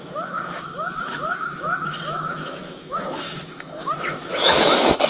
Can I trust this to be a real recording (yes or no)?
no